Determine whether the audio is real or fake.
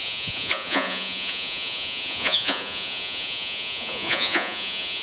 fake